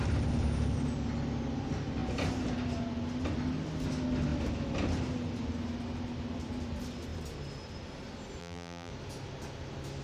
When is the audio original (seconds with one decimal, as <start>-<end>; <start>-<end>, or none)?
0.0-8.4; 8.9-10.0

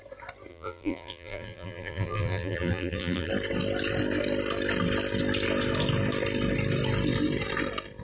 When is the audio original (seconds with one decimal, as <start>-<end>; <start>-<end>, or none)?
0.0-0.5; 3.3-8.0

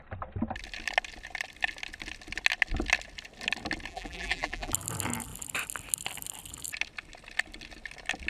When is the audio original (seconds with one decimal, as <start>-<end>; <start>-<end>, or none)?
0.0-3.9; 4.7-8.3

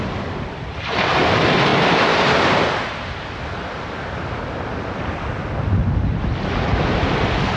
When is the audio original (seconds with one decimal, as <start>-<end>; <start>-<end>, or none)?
0.0-7.6

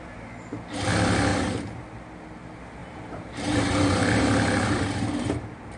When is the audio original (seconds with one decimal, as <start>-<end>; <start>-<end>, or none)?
0.0-1.3; 1.8-2.8

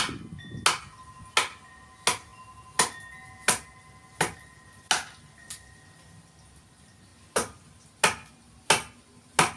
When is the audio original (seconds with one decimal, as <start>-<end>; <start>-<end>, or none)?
0.0-9.6

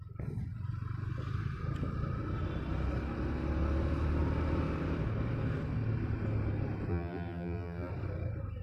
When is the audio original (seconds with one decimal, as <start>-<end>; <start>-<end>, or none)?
0.0-6.9; 7.9-8.6

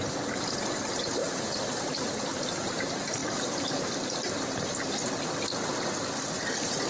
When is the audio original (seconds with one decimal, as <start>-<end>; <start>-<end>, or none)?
0.0-1.2; 2.1-6.9